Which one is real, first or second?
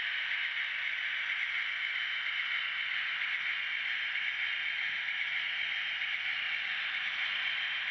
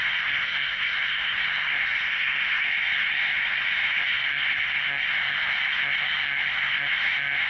first